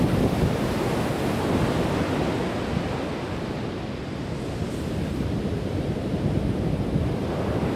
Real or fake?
real